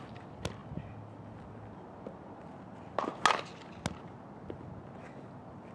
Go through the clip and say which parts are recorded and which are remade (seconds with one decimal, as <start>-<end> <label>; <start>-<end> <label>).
0.0-5.7 recorded